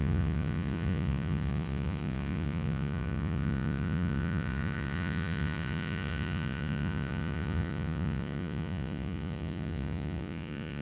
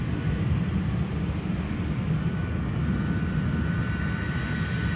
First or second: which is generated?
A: first